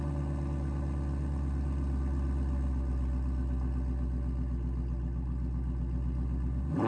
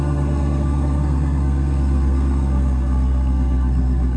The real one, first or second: first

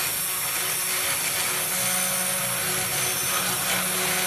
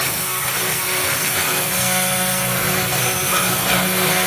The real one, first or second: first